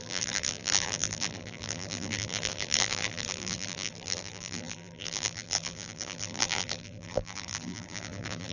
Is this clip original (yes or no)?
no